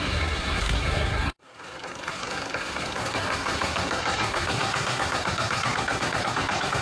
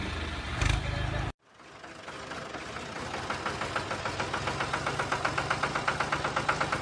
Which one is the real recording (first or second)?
second